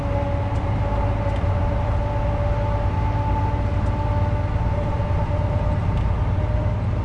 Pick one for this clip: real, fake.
real